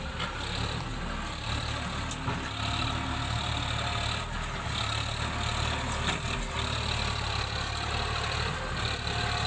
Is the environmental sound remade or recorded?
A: recorded